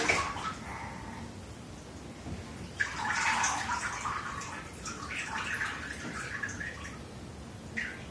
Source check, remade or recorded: recorded